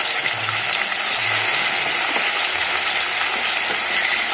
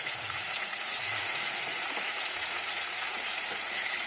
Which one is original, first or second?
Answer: first